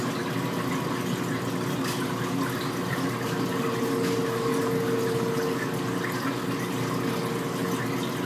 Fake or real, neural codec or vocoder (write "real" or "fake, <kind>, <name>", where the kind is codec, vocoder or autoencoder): real